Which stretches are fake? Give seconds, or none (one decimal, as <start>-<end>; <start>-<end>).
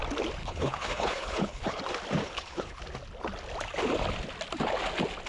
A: 0.4-1.8; 2.2-2.8